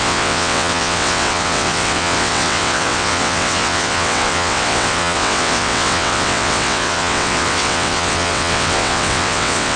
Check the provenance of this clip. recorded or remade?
remade